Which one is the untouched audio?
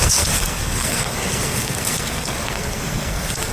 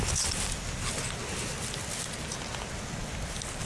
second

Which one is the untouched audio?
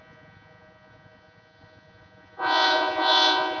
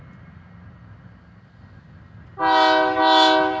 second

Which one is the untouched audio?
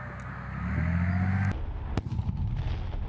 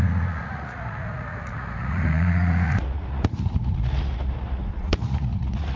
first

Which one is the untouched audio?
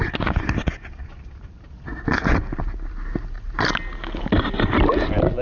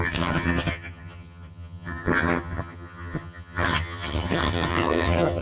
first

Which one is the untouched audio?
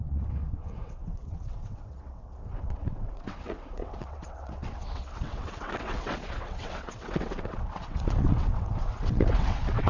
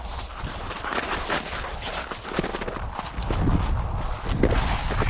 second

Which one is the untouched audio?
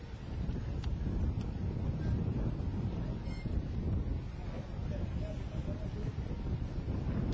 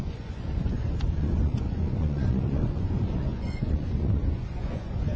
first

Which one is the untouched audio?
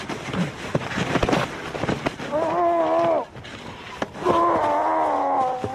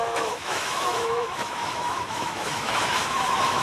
first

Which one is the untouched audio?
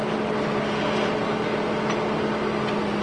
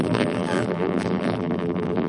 first